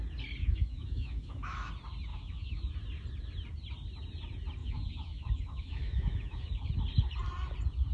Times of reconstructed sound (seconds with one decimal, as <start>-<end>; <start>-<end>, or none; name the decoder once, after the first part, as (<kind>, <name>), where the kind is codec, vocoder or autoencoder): 0.4-1.7 (autoencoder, DAC-VAE); 2.1-2.7; 4.6-6.7